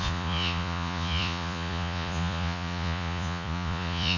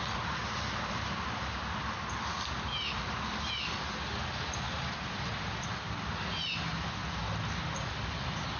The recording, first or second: second